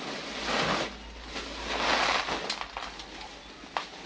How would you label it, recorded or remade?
recorded